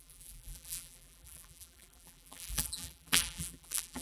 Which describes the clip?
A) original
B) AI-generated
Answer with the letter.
B